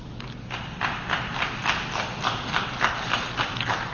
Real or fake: real